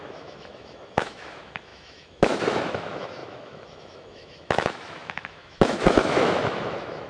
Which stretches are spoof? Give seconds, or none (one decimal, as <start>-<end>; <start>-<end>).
0.0-7.1